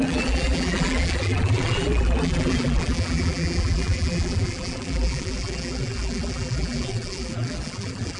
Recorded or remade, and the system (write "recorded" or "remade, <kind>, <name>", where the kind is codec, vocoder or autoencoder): remade, vocoder, BigVGAN v2